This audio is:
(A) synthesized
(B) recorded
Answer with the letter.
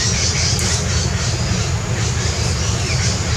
B